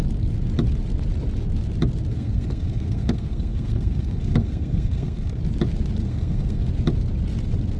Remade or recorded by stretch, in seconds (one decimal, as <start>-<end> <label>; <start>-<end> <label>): 0.0-2.1 recorded; 2.1-5.4 remade; 5.4-6.0 recorded; 6.0-6.7 remade; 6.7-7.8 recorded